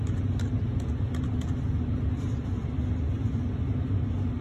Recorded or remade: recorded